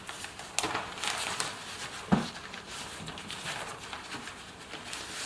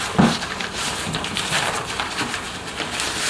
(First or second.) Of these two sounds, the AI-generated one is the second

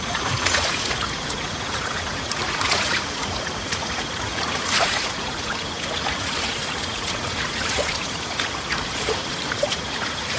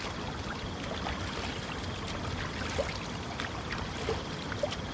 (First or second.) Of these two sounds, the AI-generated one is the first